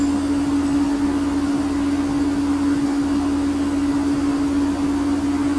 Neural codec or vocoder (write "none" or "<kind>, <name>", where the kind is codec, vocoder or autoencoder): none